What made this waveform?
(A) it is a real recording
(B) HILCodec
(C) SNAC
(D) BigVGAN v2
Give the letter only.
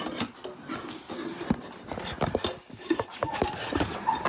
A